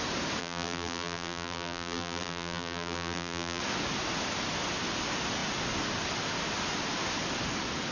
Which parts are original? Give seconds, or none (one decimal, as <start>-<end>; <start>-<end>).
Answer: 0.0-0.4; 3.6-7.9